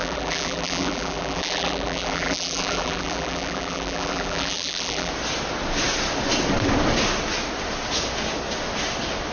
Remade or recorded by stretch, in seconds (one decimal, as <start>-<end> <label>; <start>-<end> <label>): 0.0-5.1 remade; 5.1-9.3 recorded